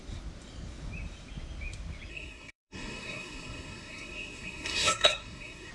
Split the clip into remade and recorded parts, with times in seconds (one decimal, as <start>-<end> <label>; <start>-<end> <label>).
0.0-2.1 recorded; 2.1-5.7 remade